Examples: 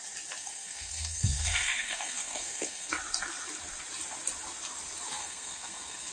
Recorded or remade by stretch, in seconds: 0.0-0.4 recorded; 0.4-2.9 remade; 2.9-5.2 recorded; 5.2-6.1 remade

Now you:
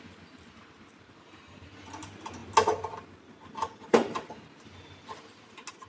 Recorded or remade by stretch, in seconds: 0.0-5.9 recorded

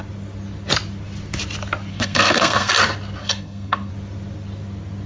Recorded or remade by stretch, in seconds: 0.0-1.9 recorded; 1.9-2.7 remade; 2.7-3.2 recorded; 3.2-3.9 remade; 3.9-5.1 recorded

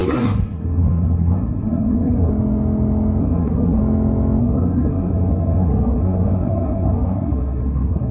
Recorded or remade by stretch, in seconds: 0.0-2.3 remade; 2.3-3.2 recorded; 3.2-3.8 remade; 3.8-4.4 recorded; 4.4-8.1 remade

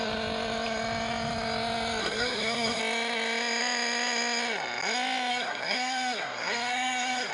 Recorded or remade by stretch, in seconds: 0.0-2.0 recorded; 2.0-2.8 remade; 2.8-5.3 recorded; 5.3-7.3 remade

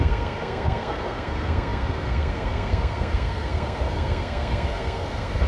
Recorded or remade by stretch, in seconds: 0.0-5.5 remade

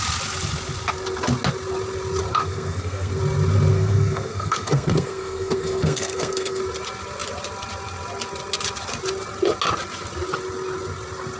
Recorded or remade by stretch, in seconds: 0.0-2.3 recorded; 2.3-3.2 remade; 3.2-3.7 recorded; 3.7-6.6 remade; 6.6-11.4 recorded

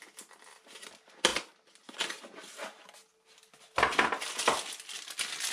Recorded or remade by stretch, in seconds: 0.0-5.5 recorded